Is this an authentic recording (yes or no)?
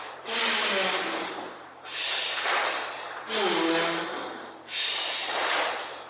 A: yes